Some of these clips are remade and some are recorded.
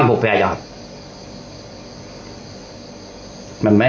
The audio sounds recorded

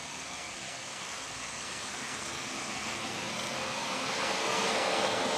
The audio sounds remade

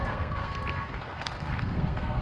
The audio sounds remade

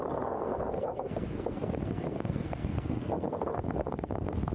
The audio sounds remade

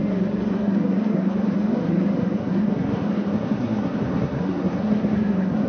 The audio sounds remade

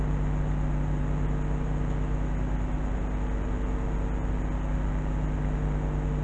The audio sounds recorded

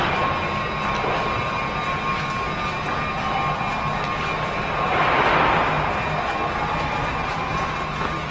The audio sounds recorded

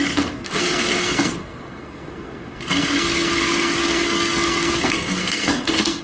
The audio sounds remade